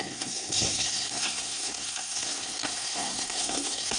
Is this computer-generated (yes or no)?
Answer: yes